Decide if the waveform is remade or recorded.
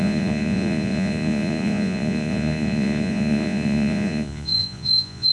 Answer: remade